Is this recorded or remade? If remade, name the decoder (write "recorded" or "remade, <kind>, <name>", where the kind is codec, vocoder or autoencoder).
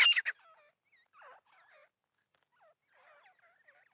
recorded